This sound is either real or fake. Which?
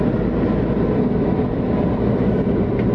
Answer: real